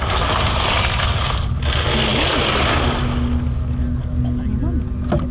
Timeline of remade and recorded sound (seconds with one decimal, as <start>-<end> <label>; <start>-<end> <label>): 0.0-5.3 recorded